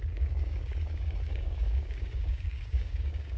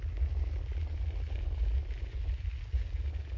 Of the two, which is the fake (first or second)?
first